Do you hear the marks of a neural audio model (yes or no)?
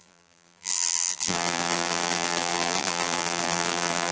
yes